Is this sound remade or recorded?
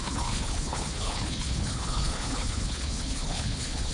remade